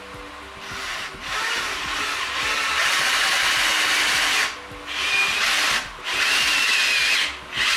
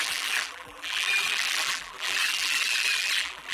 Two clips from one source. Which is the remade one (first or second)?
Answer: second